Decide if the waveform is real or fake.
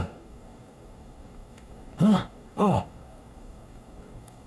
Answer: fake